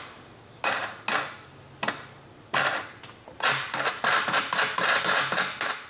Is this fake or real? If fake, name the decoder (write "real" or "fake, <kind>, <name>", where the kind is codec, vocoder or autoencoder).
real